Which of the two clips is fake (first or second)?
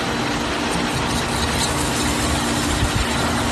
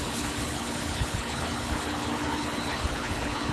second